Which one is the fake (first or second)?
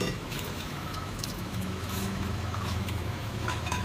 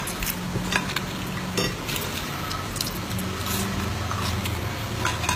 first